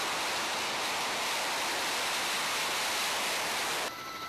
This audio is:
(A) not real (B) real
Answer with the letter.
B